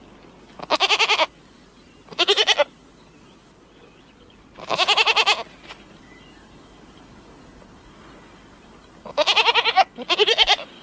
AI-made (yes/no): no